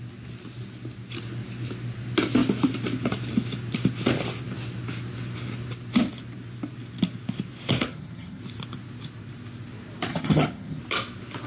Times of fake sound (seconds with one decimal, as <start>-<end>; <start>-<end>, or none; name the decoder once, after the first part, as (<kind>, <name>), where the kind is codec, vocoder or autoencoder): 7.9-8.4 (vocoder, HiFi-GAN); 10.1-10.8